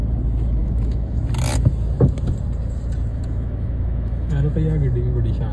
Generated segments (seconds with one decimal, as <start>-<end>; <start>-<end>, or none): 0.6-1.2; 3.1-4.5